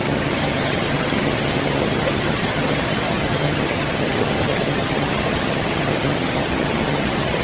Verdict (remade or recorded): remade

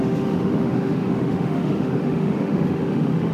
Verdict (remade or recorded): remade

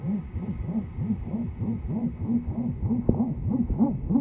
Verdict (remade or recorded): recorded